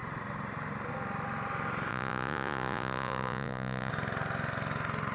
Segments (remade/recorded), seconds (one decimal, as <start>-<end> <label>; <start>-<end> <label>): 0.0-1.9 recorded; 1.9-3.9 remade; 3.9-5.1 recorded